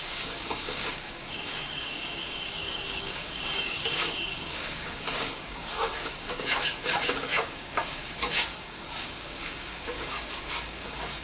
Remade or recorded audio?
remade